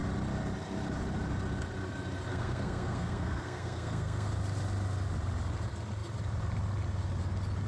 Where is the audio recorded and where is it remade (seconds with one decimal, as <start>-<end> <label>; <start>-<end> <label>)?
0.0-2.3 recorded; 2.3-4.3 remade; 4.3-7.7 recorded